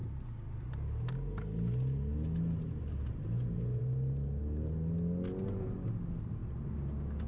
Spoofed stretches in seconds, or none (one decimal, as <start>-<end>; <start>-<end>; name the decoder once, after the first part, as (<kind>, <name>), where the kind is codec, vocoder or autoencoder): none